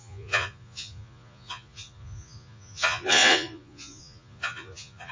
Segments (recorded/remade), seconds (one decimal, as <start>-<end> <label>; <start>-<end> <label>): 0.0-5.1 remade